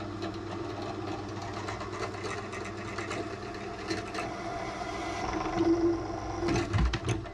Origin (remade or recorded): recorded